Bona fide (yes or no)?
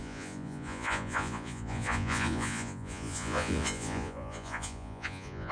no